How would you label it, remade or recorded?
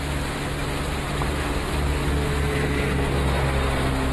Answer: recorded